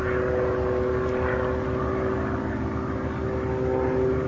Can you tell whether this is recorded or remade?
recorded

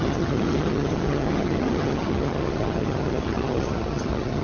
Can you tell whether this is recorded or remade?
remade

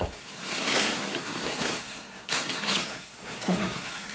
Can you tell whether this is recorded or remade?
remade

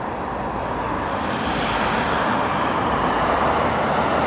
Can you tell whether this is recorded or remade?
recorded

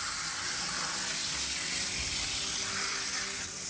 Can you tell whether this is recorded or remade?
recorded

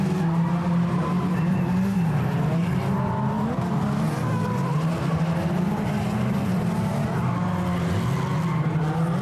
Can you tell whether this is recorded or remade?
recorded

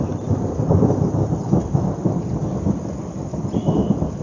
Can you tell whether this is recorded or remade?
recorded